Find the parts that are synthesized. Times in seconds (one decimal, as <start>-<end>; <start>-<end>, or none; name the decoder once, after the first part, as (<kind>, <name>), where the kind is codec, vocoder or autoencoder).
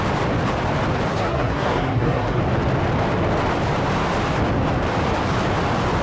1.1-2.4 (codec, SNAC)